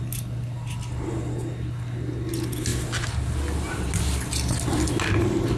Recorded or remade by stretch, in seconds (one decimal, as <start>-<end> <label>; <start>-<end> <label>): 0.0-5.6 recorded